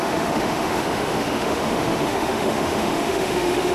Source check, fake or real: fake